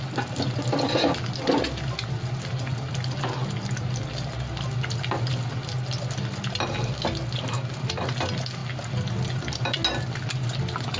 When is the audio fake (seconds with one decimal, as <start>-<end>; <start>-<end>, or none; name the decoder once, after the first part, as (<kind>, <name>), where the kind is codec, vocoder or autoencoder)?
none